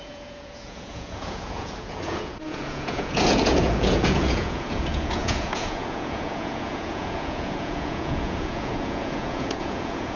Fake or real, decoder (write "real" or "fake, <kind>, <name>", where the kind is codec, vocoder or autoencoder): fake, vocoder, Vocos